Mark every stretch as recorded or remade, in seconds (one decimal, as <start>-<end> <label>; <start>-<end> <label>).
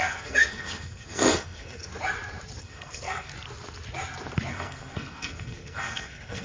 0.0-1.9 remade; 1.9-2.6 recorded; 2.6-3.3 remade; 3.3-4.5 recorded; 4.5-6.4 remade